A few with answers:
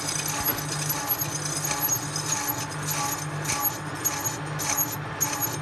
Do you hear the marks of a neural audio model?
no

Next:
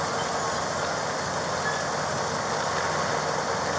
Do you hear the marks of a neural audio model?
no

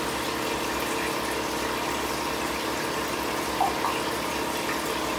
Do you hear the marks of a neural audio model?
no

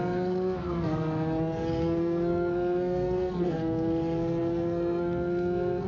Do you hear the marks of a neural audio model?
yes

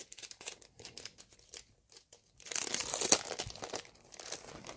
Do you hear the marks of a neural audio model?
no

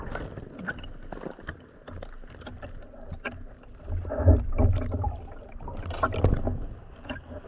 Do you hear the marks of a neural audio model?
no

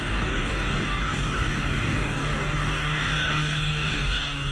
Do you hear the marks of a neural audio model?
yes